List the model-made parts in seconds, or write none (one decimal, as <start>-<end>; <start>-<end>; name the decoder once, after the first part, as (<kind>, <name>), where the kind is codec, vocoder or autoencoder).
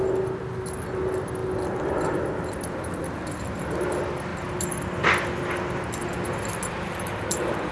none